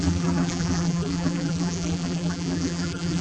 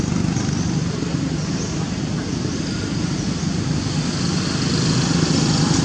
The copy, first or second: first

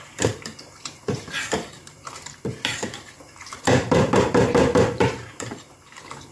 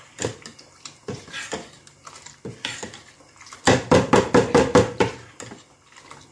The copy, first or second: first